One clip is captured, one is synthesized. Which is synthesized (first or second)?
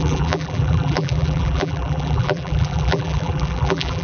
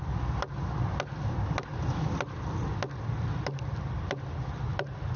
first